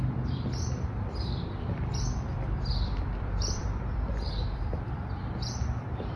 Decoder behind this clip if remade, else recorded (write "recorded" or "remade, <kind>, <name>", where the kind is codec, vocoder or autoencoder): remade, vocoder, BigVGAN v2